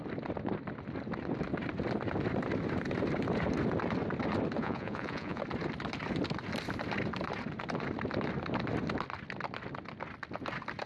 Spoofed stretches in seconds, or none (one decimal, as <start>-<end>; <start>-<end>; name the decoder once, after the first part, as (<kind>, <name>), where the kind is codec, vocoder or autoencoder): 4.6-5.4 (vocoder, Vocos)